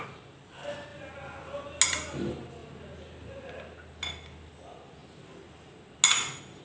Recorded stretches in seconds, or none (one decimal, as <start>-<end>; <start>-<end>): 0.0-6.6